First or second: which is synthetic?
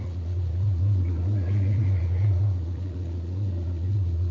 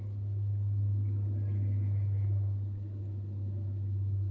first